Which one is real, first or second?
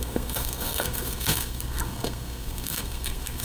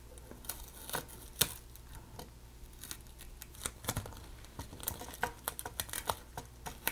second